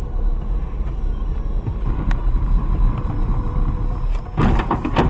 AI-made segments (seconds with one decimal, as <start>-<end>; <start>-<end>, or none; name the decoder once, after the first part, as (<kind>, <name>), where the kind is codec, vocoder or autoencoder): none